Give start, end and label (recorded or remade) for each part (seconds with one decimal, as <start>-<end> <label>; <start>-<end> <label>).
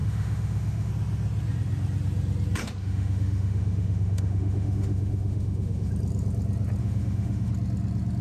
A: 0.0-0.9 remade; 0.9-2.8 recorded; 2.8-5.9 remade; 5.9-6.8 recorded; 6.8-7.5 remade; 7.5-8.2 recorded